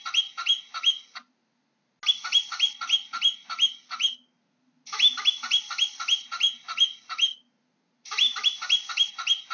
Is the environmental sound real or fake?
real